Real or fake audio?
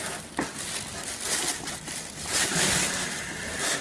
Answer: real